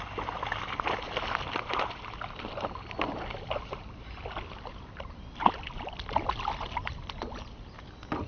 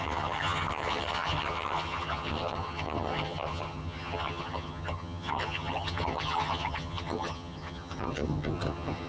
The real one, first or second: first